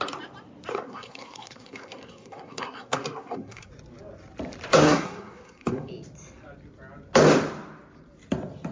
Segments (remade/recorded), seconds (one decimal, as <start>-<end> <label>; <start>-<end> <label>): 0.0-0.7 recorded; 0.7-3.7 remade; 3.7-4.7 recorded; 4.7-5.9 remade; 5.9-8.7 recorded